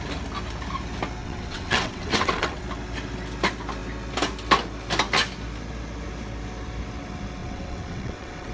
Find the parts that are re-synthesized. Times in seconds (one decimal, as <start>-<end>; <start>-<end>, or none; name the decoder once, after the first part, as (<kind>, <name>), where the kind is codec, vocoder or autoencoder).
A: 1.2-2.6 (vocoder, WaveNeXt); 7.4-8.5